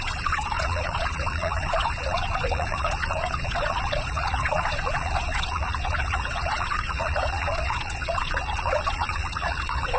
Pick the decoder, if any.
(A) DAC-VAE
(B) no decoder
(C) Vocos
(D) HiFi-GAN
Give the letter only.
C